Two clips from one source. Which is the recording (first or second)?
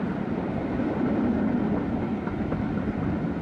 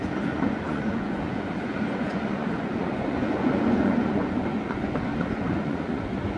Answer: first